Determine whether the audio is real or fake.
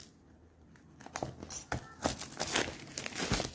real